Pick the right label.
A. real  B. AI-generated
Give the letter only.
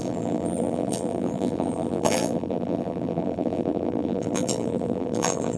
B